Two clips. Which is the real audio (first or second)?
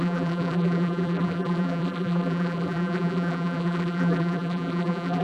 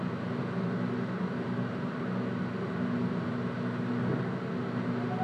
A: second